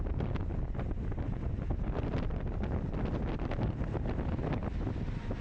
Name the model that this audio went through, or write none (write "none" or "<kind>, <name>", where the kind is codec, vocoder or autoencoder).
none